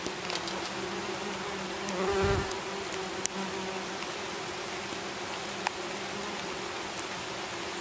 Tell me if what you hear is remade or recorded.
recorded